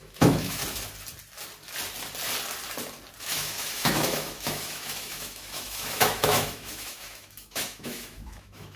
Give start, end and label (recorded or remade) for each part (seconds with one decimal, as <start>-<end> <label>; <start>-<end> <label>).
0.0-0.6 remade; 0.6-3.2 recorded; 3.2-8.8 remade